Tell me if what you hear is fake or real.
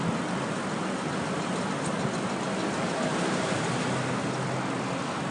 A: real